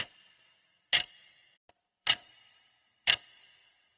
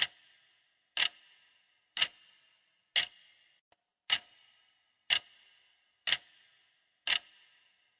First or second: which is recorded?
second